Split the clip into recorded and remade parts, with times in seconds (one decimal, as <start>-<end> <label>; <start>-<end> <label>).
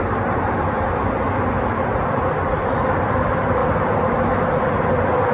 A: 0.0-3.6 remade; 3.6-4.8 recorded; 4.8-5.3 remade